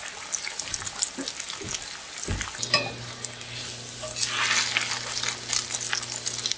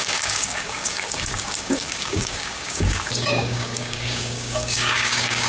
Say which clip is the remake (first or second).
second